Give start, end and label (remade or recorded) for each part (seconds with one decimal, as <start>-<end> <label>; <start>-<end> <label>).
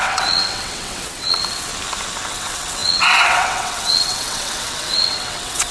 0.0-1.7 remade; 1.7-2.3 recorded; 2.3-5.7 remade